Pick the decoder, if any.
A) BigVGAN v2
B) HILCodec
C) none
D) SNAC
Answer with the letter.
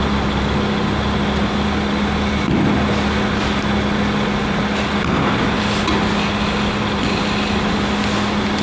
C